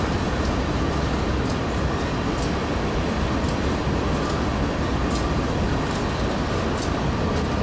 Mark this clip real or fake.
real